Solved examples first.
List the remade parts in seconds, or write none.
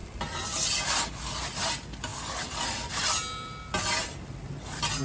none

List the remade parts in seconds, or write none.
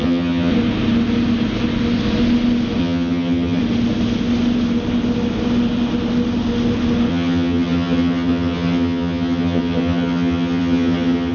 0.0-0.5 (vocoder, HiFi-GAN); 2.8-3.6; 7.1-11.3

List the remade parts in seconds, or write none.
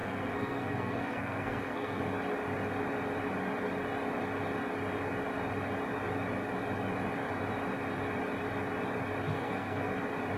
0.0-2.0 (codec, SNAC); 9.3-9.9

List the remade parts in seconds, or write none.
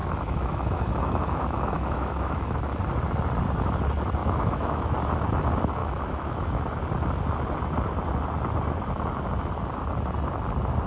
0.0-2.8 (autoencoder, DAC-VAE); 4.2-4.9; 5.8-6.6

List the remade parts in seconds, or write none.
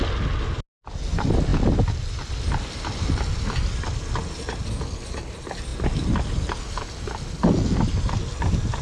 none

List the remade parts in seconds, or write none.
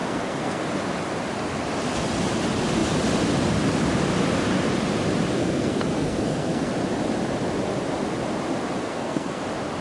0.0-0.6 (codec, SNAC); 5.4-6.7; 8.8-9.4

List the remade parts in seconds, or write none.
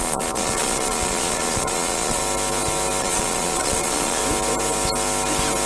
0.0-2.2 (vocoder, Vocos); 3.0-4.2